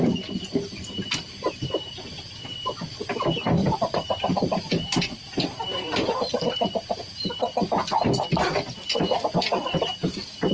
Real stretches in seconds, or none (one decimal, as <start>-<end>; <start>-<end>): 0.0-3.6; 7.4-10.5